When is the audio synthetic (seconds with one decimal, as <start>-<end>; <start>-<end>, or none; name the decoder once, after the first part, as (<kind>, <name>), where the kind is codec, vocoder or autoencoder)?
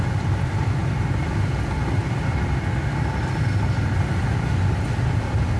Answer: none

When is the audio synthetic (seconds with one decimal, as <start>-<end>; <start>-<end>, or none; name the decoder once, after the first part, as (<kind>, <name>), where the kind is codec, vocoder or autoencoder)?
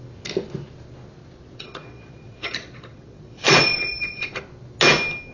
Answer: 1.2-4.4 (vocoder, Vocos)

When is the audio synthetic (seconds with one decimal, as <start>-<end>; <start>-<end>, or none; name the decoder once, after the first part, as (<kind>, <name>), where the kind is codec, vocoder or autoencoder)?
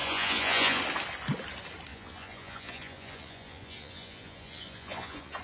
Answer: 0.0-0.8 (vocoder, Vocos); 1.9-5.4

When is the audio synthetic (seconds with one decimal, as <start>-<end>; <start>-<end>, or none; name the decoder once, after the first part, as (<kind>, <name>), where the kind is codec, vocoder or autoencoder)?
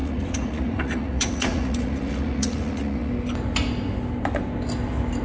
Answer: 0.0-3.1 (vocoder, Vocos)